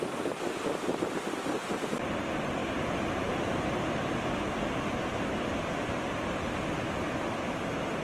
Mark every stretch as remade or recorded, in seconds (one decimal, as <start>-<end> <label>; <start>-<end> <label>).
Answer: 0.0-8.0 recorded